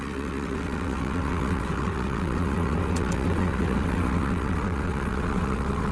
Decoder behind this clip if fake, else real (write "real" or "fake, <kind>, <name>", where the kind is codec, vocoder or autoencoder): fake, vocoder, WaveNeXt